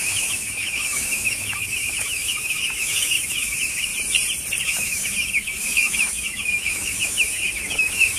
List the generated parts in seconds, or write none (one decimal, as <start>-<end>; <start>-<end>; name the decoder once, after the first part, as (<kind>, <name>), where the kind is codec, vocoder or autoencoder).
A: 0.0-3.9 (autoencoder, DAC-VAE); 4.6-8.2